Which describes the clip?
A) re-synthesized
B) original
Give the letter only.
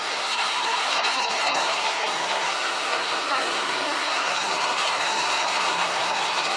A